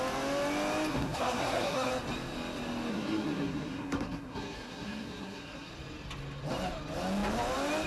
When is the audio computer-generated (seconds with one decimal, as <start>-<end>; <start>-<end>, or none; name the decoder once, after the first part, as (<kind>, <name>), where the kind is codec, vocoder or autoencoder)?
0.9-1.9 (codec, SNAC); 2.9-5.7